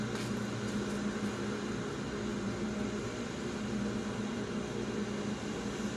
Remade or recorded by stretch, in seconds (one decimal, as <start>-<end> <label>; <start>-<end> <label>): 0.0-2.3 recorded; 2.3-3.6 remade; 3.6-6.0 recorded